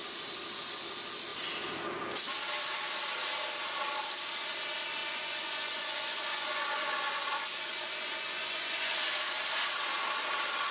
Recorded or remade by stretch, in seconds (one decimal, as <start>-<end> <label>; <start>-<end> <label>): 0.0-5.0 recorded; 5.0-9.1 remade; 9.1-10.7 recorded